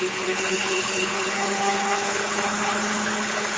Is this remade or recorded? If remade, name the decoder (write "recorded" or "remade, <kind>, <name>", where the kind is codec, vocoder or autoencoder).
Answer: remade, codec, HILCodec